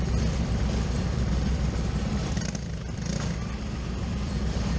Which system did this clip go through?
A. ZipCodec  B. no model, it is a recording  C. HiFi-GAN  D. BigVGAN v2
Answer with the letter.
D